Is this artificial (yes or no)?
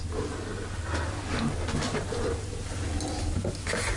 no